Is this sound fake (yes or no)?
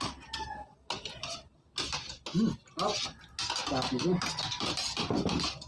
no